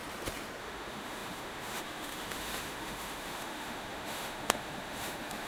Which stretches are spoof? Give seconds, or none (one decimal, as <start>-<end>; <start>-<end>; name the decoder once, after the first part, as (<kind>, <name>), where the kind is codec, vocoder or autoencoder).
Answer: 0.6-5.5 (autoencoder, DAC-VAE)